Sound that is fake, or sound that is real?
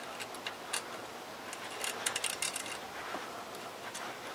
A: real